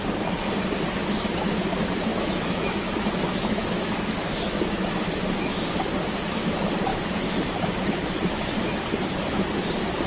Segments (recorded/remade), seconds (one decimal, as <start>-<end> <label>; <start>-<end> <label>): 0.0-2.1 recorded; 2.1-5.7 remade; 5.7-6.9 recorded; 6.9-8.8 remade; 8.8-10.1 recorded